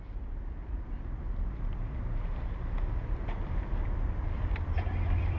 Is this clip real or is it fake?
fake